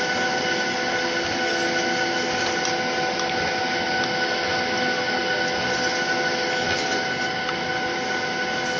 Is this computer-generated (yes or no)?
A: no